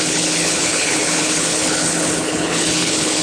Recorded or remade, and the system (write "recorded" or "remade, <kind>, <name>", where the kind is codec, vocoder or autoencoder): remade, codec, HILCodec